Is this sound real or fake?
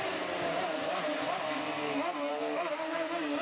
fake